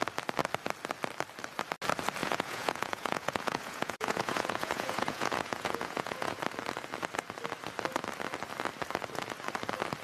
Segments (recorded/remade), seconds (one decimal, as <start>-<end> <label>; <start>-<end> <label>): 0.0-2.2 recorded; 2.2-6.4 remade; 6.4-10.0 recorded